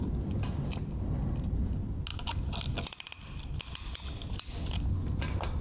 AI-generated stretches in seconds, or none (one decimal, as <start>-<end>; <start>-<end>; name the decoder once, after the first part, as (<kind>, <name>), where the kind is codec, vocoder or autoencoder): none